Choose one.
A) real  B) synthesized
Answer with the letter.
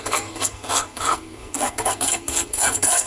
B